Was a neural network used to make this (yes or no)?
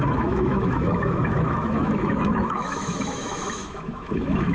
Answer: yes